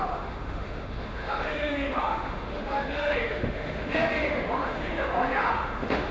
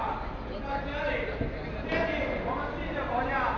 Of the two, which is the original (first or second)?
second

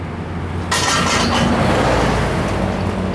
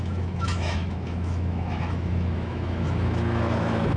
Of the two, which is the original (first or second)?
first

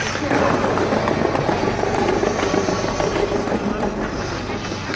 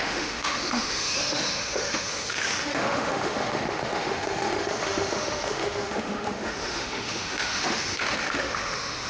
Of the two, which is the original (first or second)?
first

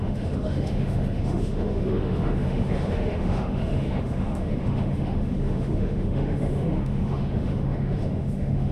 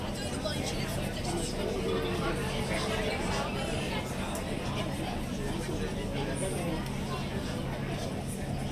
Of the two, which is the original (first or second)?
second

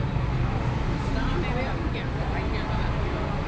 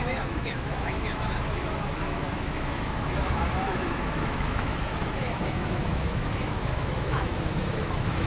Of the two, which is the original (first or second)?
first